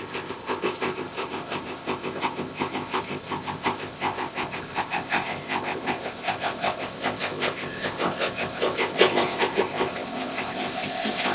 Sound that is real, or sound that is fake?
fake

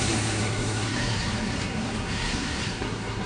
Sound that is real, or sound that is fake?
fake